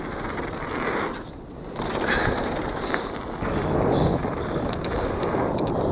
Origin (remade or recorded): recorded